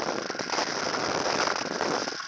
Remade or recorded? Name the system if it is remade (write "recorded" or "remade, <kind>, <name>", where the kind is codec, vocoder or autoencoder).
recorded